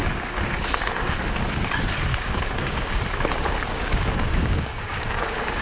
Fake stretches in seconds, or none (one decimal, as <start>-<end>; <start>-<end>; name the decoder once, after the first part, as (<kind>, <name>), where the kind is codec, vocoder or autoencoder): 2.1-3.0 (codec, DAC); 3.7-5.6